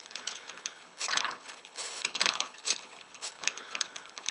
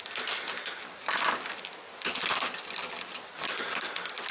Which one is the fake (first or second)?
first